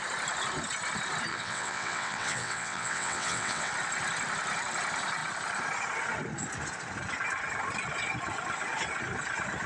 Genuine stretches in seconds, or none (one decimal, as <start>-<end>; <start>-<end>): 0.0-1.3; 3.7-9.7